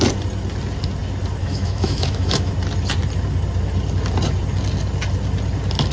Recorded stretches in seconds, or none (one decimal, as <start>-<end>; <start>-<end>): 0.0-1.4; 2.5-5.9